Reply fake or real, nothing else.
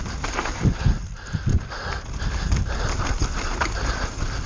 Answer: real